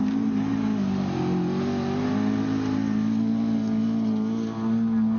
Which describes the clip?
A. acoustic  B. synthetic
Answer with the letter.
A